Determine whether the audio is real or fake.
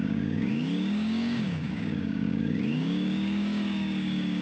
fake